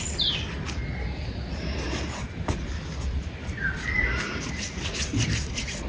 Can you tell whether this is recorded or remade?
recorded